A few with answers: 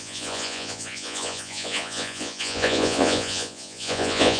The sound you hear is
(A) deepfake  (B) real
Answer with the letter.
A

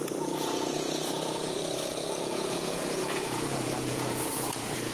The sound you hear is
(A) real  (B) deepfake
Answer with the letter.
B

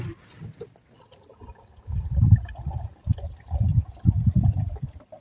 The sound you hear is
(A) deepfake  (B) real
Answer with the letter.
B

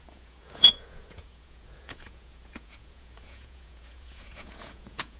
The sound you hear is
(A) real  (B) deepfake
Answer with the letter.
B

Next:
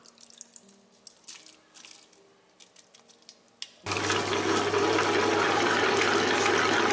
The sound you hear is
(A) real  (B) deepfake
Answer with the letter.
A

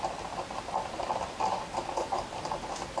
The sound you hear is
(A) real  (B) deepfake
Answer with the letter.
A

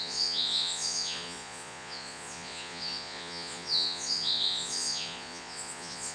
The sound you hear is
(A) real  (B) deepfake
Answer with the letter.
B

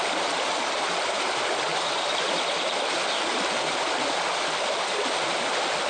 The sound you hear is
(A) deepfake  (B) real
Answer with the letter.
B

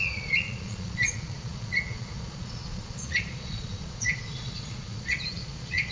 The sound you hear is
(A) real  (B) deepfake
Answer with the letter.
B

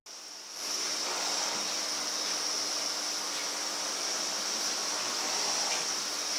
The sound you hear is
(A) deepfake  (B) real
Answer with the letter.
B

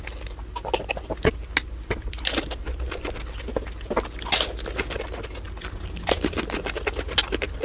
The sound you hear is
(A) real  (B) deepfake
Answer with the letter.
A